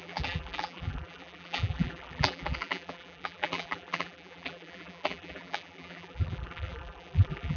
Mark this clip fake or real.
fake